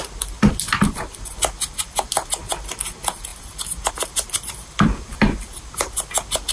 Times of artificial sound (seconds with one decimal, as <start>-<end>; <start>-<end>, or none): none